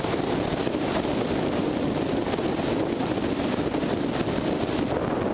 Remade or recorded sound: recorded